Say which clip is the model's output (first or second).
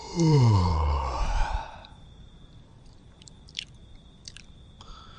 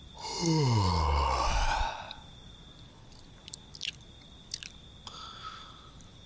first